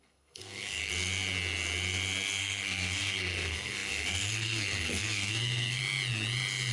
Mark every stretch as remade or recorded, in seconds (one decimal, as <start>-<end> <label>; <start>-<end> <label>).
0.0-0.9 remade; 0.9-2.4 recorded; 2.4-5.8 remade; 5.8-6.7 recorded